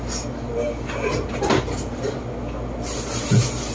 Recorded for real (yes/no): yes